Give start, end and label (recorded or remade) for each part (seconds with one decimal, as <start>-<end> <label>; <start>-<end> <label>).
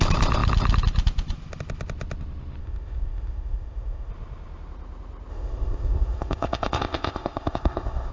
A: 0.0-2.6 recorded; 2.6-4.1 remade; 4.1-5.3 recorded; 5.3-8.1 remade